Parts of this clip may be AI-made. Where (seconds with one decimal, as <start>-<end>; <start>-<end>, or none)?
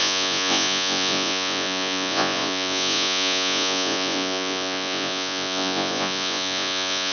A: 0.0-7.1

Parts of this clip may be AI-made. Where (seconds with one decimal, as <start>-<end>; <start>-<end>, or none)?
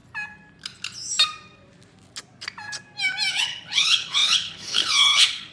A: 3.3-5.5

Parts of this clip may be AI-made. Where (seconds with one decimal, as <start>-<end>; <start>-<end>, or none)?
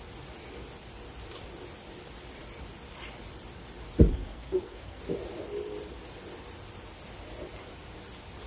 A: 4.1-5.0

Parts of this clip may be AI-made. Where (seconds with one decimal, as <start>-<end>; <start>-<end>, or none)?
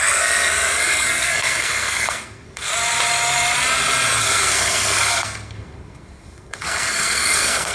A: 0.0-2.7; 4.2-7.7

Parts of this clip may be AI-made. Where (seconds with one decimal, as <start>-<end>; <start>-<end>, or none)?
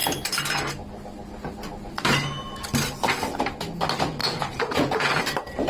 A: 4.2-5.2